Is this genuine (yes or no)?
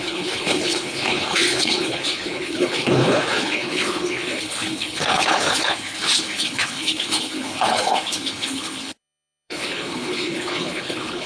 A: no